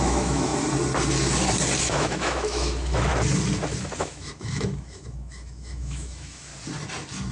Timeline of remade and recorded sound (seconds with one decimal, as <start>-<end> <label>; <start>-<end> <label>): 0.0-0.5 remade; 0.5-1.8 recorded; 1.8-3.1 remade; 3.1-4.0 recorded; 4.0-6.5 remade; 6.5-7.3 recorded